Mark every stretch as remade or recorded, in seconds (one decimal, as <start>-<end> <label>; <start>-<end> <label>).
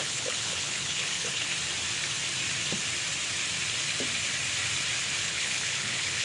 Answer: 0.0-1.5 remade; 1.5-5.2 recorded; 5.2-6.2 remade